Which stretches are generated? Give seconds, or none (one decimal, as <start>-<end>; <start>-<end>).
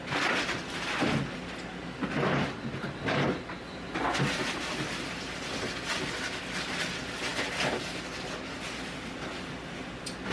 none